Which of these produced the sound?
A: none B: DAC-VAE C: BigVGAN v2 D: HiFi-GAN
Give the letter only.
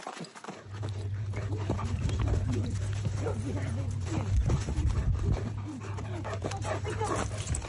C